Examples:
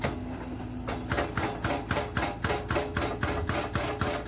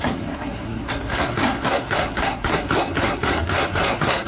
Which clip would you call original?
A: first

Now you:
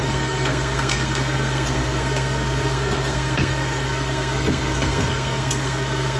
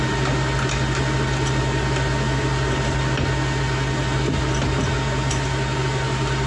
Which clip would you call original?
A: second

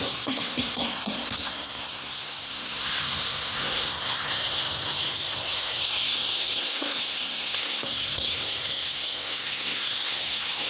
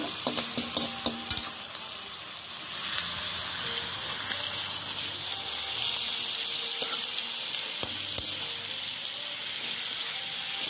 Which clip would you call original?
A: second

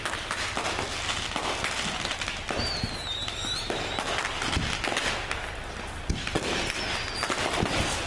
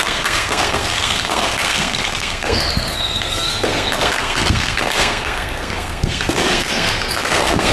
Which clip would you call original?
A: first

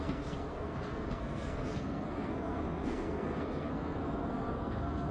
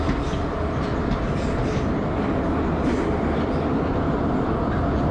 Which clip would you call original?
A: second